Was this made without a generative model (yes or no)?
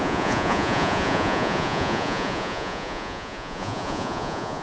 no